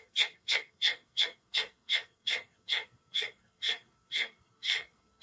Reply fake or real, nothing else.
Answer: fake